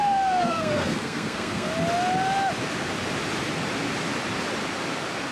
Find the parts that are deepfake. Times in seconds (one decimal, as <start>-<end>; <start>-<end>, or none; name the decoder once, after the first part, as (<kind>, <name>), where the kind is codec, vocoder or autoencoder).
0.0-1.7 (codec, SNAC)